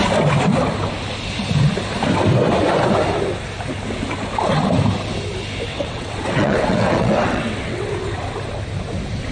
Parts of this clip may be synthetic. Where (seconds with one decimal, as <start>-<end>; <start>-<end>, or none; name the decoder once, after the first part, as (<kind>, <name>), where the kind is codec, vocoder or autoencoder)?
5.7-7.9 (vocoder, WaveNeXt)